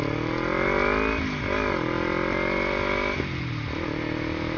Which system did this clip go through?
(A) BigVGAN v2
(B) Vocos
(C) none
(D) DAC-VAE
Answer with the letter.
C